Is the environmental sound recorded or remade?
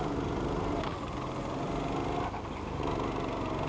recorded